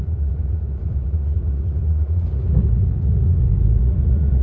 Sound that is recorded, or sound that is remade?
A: remade